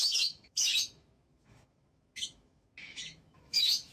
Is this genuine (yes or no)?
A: no